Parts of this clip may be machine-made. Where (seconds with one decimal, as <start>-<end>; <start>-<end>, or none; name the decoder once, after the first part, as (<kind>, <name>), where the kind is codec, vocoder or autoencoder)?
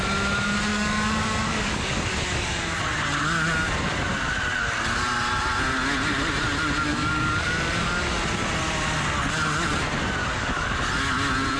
0.7-2.8 (codec, DAC); 6.9-8.0; 10.2-10.9